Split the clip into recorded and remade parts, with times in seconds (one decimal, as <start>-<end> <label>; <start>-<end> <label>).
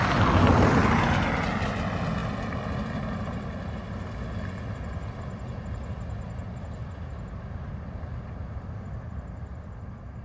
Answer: 0.0-10.2 recorded